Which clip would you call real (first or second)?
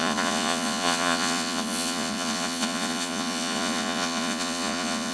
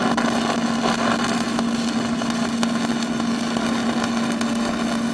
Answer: second